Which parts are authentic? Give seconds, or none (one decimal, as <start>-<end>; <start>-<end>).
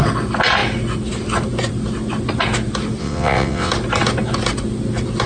0.0-3.0; 3.7-5.3